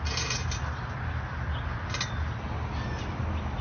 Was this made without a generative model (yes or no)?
yes